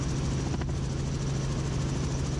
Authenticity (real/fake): real